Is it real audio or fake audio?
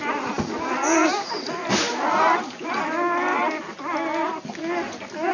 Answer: real